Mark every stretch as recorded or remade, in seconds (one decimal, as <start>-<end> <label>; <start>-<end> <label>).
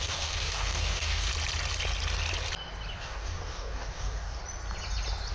0.0-1.3 remade; 1.3-3.0 recorded; 3.0-4.4 remade; 4.4-5.3 recorded